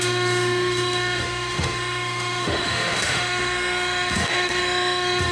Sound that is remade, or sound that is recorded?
remade